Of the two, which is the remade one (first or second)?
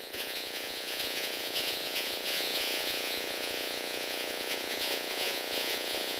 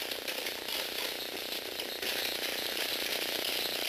first